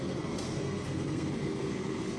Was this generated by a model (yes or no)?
yes